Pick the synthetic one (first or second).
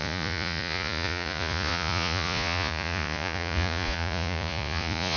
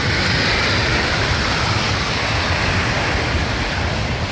first